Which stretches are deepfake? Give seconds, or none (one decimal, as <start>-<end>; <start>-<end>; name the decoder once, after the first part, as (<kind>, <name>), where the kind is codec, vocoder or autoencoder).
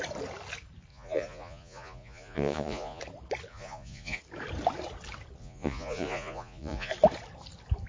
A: 0.9-3.0 (vocoder, Vocos); 3.5-4.2; 5.4-6.9